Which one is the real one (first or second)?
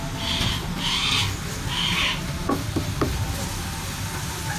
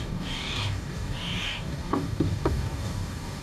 first